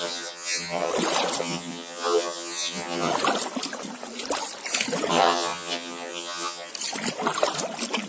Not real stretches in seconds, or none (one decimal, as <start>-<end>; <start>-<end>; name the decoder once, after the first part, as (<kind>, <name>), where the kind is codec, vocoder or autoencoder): 0.0-0.9 (vocoder, HiFi-GAN); 1.4-3.1; 5.1-6.7